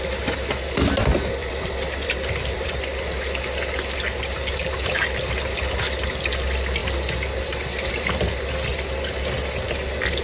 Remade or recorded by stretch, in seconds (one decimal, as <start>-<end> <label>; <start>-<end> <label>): 0.0-1.4 recorded; 1.4-2.7 remade; 2.7-10.2 recorded